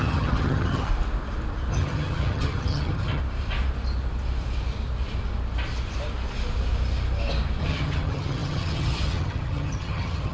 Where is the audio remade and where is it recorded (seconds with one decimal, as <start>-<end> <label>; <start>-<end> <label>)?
0.0-0.9 remade; 0.9-1.7 recorded; 1.7-3.2 remade; 3.2-7.6 recorded; 7.6-10.3 remade